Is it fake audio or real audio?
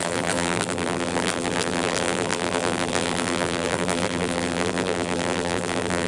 fake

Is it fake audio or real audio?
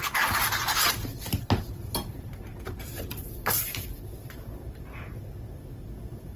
real